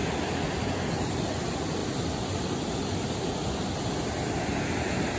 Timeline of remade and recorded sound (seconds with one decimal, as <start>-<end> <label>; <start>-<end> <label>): 0.0-1.8 recorded; 1.8-3.1 remade; 3.1-5.2 recorded